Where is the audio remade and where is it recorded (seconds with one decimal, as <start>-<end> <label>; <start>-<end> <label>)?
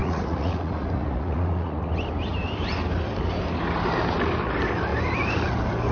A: 0.0-1.9 remade; 1.9-5.9 recorded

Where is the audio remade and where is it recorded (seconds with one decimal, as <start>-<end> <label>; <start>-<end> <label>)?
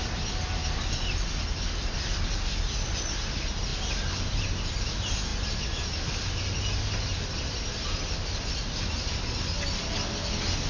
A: 0.0-10.7 recorded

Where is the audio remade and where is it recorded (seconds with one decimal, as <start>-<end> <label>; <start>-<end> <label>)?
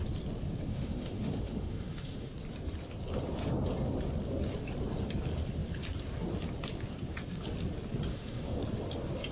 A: 0.0-0.7 recorded; 0.7-2.3 remade; 2.3-8.1 recorded; 8.1-8.6 remade; 8.6-9.3 recorded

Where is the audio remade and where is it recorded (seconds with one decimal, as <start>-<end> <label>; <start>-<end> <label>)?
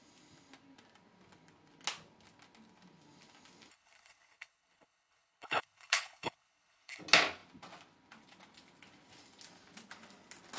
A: 0.0-3.7 recorded; 3.7-7.0 remade; 7.0-10.6 recorded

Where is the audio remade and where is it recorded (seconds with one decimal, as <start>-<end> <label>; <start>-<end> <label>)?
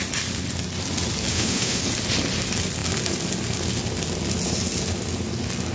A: 0.0-1.3 recorded; 1.3-1.8 remade; 1.8-5.7 recorded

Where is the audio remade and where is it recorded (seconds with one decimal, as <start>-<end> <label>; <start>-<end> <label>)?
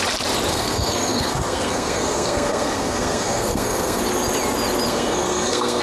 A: 0.0-0.5 recorded; 0.5-4.0 remade; 4.0-4.9 recorded; 4.9-5.8 remade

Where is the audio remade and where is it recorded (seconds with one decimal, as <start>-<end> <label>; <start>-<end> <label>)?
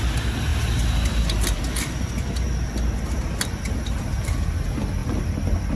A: 0.0-5.8 recorded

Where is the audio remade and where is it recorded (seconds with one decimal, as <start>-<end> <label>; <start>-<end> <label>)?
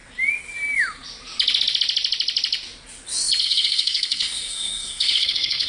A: 0.0-3.4 recorded; 3.4-5.7 remade